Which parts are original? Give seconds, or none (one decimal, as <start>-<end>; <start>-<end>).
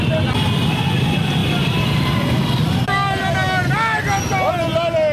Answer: 0.0-5.1